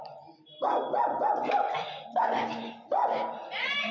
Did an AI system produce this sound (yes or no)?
no